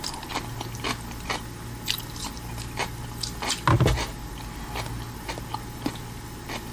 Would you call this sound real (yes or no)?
yes